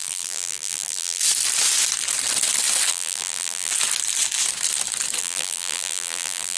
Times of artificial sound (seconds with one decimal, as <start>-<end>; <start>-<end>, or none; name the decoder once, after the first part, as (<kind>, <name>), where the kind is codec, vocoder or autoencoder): 0.0-1.2 (vocoder, BigVGAN v2); 2.9-3.7; 5.2-6.6